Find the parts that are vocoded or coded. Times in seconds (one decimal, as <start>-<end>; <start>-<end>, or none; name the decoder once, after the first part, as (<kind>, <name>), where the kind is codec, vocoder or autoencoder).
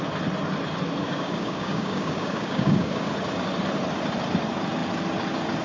1.0-3.1 (codec, DAC)